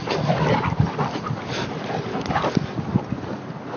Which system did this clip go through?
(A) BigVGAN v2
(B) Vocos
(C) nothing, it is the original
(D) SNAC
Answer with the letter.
C